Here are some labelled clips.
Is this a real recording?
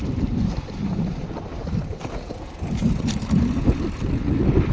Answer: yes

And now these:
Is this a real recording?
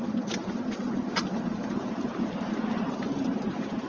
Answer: no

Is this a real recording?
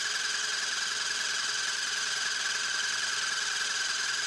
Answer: yes